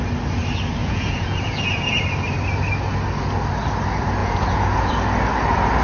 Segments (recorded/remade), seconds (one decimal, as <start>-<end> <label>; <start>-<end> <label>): 0.0-0.8 recorded; 0.8-2.0 remade; 2.0-4.2 recorded; 4.2-4.9 remade; 4.9-5.8 recorded